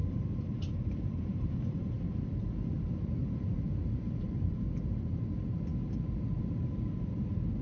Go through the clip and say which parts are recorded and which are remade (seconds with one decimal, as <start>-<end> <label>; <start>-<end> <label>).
0.0-2.0 remade; 2.0-3.2 recorded; 3.2-5.2 remade; 5.2-7.6 recorded